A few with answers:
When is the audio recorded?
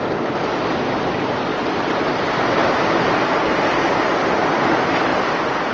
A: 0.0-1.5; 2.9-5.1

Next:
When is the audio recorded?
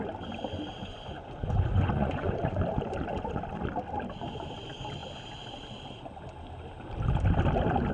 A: 0.0-0.8; 2.6-7.9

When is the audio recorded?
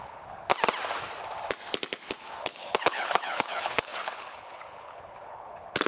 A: 0.5-2.4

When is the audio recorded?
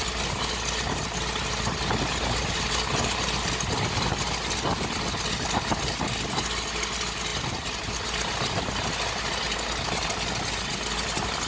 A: 0.0-11.5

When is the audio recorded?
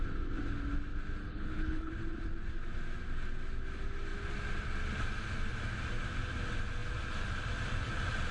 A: 0.0-1.2; 1.9-8.3